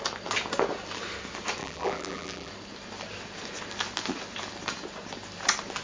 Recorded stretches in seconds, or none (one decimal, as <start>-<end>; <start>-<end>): 0.0-1.6; 2.5-5.8